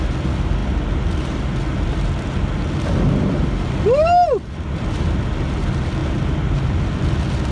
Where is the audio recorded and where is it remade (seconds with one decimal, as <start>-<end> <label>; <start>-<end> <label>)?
0.0-7.5 recorded